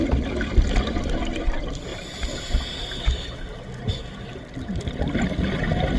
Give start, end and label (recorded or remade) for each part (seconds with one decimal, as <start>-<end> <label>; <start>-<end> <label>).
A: 0.0-6.0 recorded